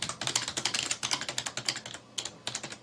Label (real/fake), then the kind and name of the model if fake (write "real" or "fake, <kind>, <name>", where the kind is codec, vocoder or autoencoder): real